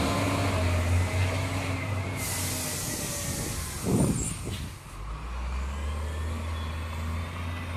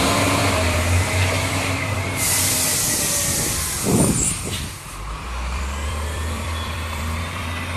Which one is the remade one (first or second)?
second